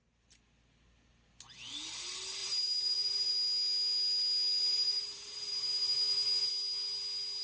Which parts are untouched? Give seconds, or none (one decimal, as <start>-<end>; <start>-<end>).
0.0-2.4; 3.3-4.6; 6.5-7.4